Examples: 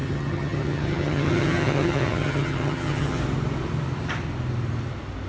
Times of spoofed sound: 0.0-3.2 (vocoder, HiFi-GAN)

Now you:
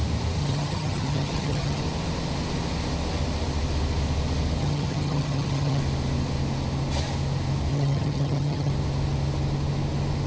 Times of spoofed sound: 0.4-1.8 (vocoder, HiFi-GAN); 4.6-5.8; 7.7-8.7

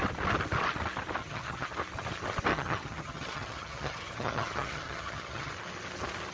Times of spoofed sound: 1.2-1.7 (vocoder, HiFi-GAN); 2.5-5.5

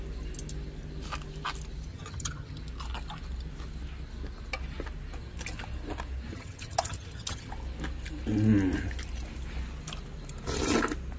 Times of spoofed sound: 1.9-2.6 (vocoder, HiFi-GAN); 6.3-7.5

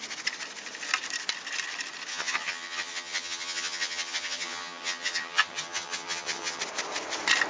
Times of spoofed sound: 2.1-6.6 (vocoder, HiFi-GAN)

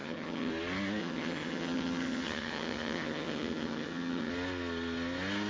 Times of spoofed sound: 0.0-0.5 (vocoder, HiFi-GAN); 1.0-4.3